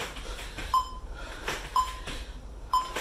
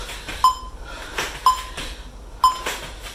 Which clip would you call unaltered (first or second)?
second